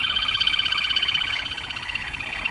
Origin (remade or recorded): remade